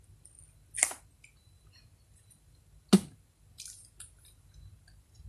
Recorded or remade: recorded